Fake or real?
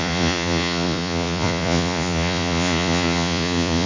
fake